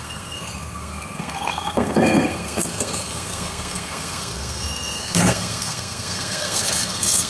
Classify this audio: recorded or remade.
remade